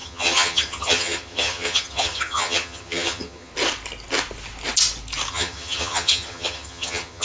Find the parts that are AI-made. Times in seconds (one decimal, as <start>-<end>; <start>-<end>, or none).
0.0-3.5; 5.3-7.2

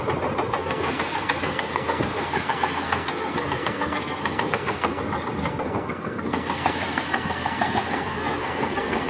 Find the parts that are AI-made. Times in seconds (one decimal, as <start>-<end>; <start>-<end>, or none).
0.6-5.0; 5.4-9.1

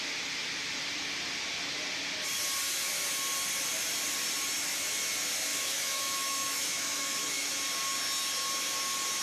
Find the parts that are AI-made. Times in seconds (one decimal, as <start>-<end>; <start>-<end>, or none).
5.5-7.5

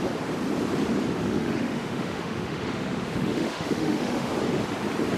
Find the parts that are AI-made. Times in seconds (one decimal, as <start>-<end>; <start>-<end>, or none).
1.2-4.3

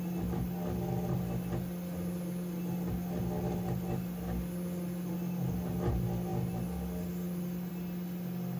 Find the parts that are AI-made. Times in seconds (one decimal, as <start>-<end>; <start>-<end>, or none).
none

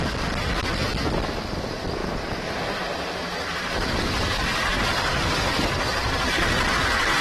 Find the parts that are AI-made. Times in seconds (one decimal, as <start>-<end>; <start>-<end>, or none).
2.0-6.3

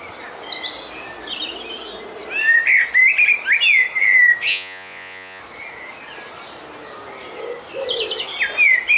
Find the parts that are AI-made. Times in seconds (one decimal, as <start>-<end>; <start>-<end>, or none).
4.5-5.4

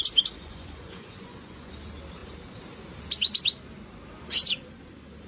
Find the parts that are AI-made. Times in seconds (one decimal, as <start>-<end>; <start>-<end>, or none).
0.4-1.7